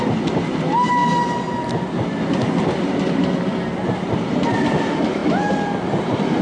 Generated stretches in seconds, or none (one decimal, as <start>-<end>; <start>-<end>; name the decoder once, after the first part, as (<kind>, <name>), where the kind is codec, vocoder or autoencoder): none